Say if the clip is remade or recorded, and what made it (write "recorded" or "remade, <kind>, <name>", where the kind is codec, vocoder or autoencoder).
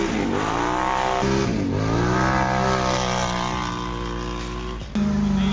recorded